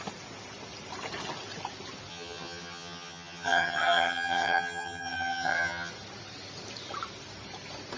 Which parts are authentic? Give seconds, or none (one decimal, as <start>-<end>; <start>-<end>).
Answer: 0.0-2.1; 5.9-8.0

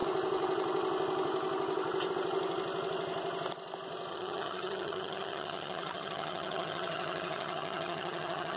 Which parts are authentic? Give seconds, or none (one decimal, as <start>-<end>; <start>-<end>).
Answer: 0.0-4.1

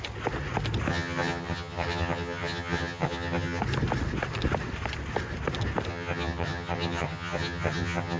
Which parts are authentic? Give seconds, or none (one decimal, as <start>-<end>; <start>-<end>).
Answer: 0.0-0.9; 3.6-5.9

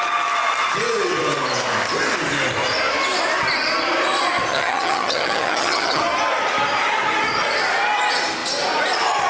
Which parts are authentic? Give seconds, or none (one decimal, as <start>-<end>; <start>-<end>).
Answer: 0.0-4.5; 6.0-9.3